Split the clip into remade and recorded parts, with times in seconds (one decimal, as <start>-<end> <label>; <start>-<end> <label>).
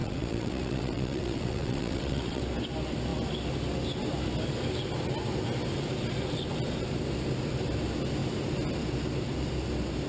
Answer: 0.0-2.4 remade; 2.4-10.1 recorded